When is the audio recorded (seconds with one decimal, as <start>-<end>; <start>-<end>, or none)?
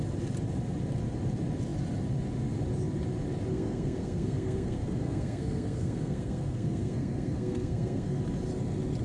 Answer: 0.0-3.5; 8.2-9.0